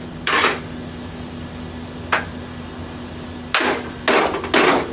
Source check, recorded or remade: recorded